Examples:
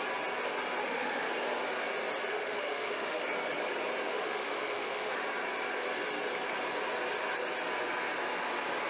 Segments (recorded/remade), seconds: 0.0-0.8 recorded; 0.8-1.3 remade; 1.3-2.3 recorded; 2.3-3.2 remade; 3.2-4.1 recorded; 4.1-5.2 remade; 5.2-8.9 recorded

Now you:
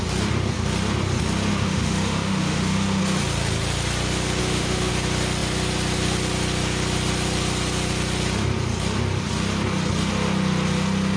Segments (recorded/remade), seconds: 0.0-1.5 recorded; 1.5-3.0 remade; 3.0-4.4 recorded; 4.4-4.9 remade; 4.9-11.2 recorded

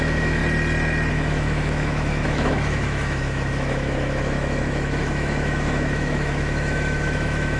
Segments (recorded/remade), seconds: 0.0-0.4 remade; 0.4-1.1 recorded; 1.1-7.6 remade

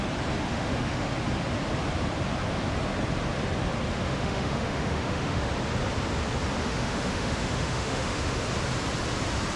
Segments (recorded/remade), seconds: 0.0-0.5 recorded; 0.5-1.1 remade; 1.1-3.9 recorded; 3.9-5.5 remade; 5.5-6.6 recorded; 6.6-8.4 remade; 8.4-9.6 recorded

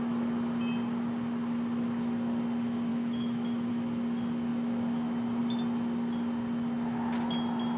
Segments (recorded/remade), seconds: 0.0-2.9 recorded; 2.9-3.7 remade; 3.7-7.8 recorded